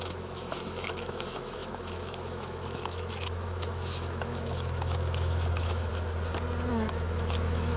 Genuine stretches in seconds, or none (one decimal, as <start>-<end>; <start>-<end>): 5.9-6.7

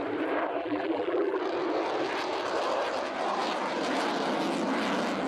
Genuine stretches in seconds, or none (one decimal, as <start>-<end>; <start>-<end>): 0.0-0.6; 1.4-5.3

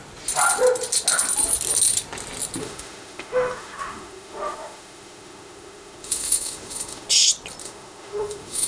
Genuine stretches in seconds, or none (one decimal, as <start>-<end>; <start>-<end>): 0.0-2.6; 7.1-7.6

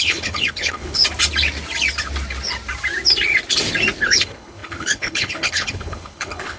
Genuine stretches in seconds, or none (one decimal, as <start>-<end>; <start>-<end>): 1.0-4.0

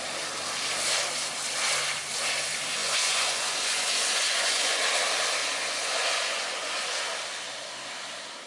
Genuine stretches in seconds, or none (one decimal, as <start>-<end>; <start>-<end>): 0.0-2.8; 4.8-5.4; 7.0-8.5